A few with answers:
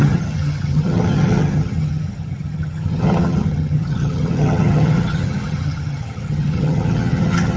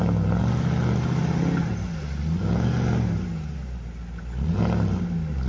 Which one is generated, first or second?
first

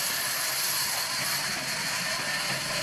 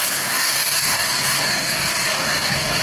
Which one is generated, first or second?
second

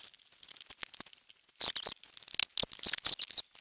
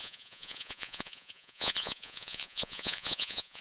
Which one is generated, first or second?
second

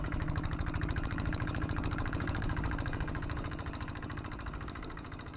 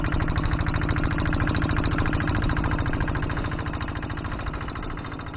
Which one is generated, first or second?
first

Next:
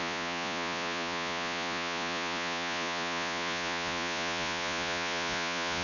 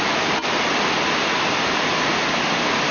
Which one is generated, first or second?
first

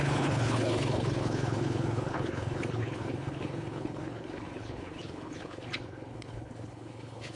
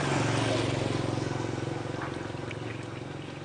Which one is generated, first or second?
first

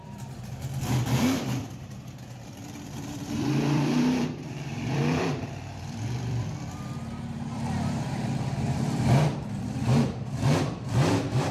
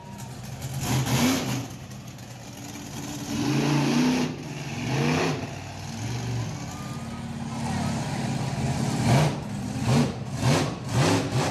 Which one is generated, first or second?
first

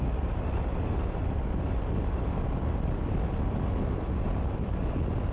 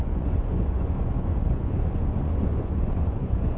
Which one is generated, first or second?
second